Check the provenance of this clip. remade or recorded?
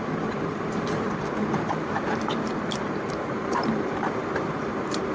remade